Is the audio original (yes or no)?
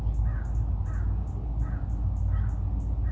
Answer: yes